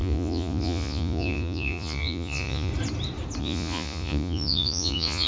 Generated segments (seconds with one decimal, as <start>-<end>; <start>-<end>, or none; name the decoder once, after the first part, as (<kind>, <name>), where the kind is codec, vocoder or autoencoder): 0.0-2.7 (vocoder, Vocos); 3.4-5.3